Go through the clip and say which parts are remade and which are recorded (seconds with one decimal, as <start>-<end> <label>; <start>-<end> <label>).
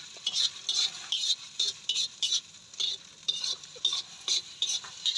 0.0-5.2 recorded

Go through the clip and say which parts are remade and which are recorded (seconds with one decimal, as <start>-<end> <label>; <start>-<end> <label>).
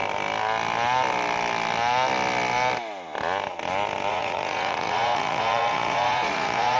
0.0-4.1 recorded; 4.1-6.8 remade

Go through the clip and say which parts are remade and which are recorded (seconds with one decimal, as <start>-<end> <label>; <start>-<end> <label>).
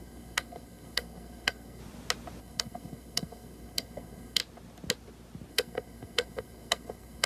0.0-1.8 remade; 1.8-2.4 recorded; 2.4-4.4 remade; 4.4-5.5 recorded; 5.5-7.3 remade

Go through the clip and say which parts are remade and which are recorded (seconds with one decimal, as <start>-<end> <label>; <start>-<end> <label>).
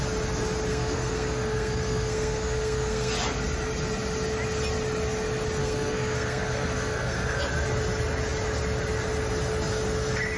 0.0-0.7 recorded; 0.7-3.1 remade; 3.1-5.6 recorded; 5.6-7.4 remade; 7.4-10.4 recorded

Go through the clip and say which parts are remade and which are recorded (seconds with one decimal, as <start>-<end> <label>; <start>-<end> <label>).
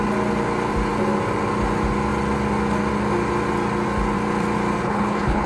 0.0-4.8 recorded; 4.8-5.5 remade